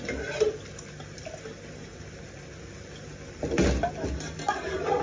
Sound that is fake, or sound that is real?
real